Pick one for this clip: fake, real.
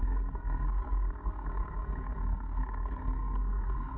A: fake